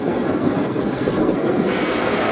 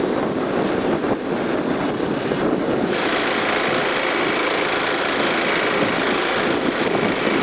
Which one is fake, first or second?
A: first